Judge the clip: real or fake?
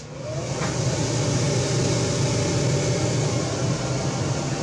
real